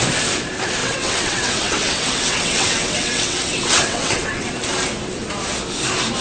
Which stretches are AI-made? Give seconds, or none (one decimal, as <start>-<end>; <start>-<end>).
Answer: 0.8-4.5